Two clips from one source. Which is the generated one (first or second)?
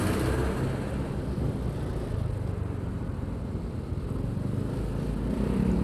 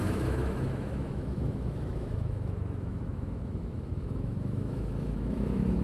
second